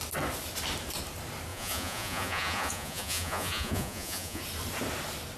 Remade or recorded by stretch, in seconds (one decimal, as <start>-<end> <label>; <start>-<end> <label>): 0.0-1.5 recorded; 1.5-4.4 remade; 4.4-5.4 recorded